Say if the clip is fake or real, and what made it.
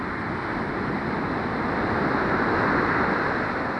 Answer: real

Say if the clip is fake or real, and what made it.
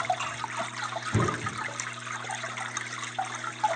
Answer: real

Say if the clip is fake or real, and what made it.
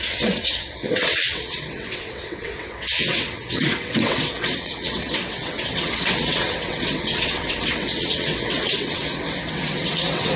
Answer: fake, vocoder, WaveNeXt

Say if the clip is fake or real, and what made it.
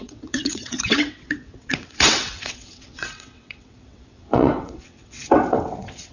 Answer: fake, vocoder, WaveNeXt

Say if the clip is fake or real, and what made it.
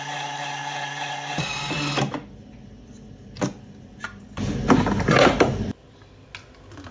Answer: real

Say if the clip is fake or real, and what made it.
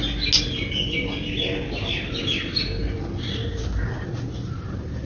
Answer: real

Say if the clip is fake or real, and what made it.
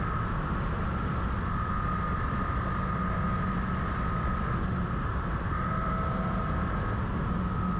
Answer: real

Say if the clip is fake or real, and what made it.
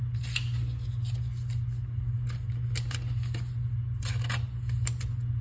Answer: real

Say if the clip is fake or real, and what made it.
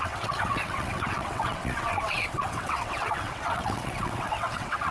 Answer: fake, vocoder, WaveNeXt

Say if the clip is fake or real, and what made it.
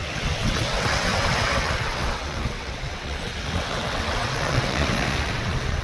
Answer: fake, vocoder, WaveNeXt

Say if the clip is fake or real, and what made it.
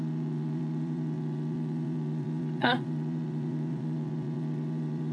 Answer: fake, vocoder, WaveNeXt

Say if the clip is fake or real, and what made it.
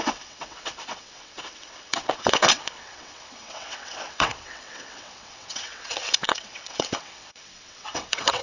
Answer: fake, vocoder, WaveNeXt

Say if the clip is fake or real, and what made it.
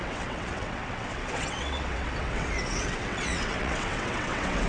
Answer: fake, vocoder, WaveNeXt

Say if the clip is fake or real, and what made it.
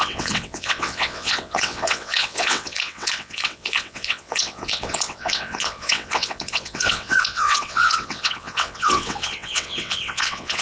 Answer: fake, vocoder, WaveNeXt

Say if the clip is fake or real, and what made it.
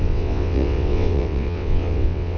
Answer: fake, vocoder, WaveNeXt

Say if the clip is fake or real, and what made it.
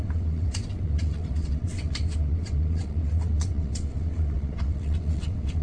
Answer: fake, vocoder, WaveNeXt